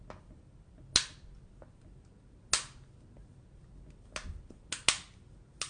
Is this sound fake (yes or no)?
no